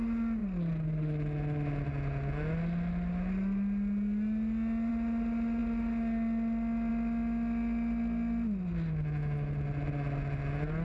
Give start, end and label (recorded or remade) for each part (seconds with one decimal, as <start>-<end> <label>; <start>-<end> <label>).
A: 0.0-10.8 recorded